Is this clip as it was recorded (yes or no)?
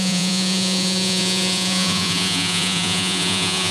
no